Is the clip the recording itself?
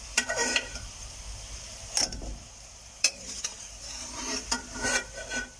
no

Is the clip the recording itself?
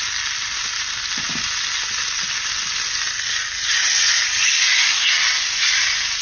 yes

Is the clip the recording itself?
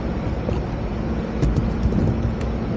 yes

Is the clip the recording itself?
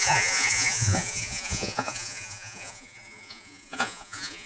no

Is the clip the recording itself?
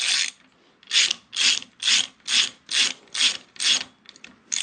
yes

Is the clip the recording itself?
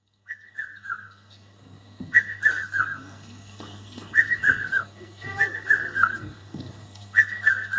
no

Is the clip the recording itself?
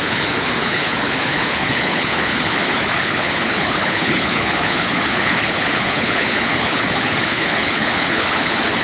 no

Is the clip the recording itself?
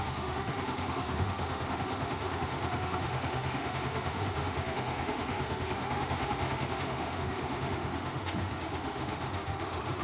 no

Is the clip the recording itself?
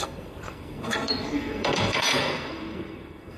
no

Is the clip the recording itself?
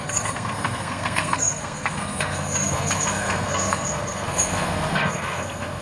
no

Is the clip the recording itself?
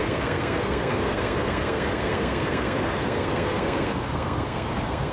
no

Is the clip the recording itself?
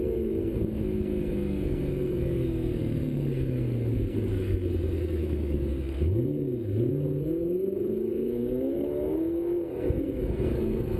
no